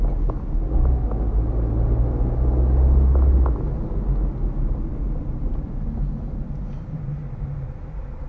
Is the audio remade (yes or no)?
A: no